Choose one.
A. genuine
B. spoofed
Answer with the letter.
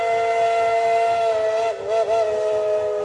A